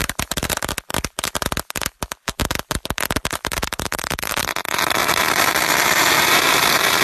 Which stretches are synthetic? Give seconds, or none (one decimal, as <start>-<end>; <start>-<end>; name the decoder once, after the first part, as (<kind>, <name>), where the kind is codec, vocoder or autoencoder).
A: 0.0-0.9 (vocoder, BigVGAN v2); 3.3-7.0